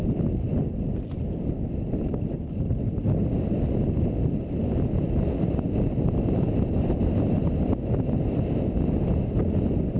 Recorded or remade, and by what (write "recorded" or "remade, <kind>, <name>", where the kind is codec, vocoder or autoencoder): recorded